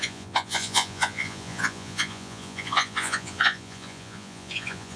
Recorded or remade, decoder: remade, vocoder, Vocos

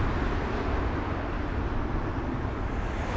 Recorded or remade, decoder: recorded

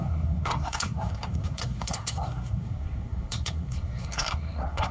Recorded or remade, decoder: remade, codec, SNAC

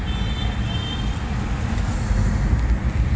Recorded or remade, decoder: recorded